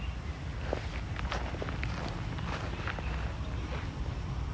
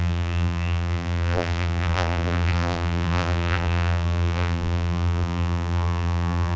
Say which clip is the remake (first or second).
second